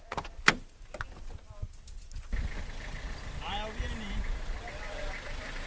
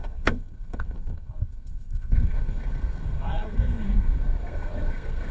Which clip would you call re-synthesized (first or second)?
second